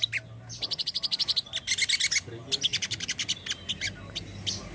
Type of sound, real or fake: real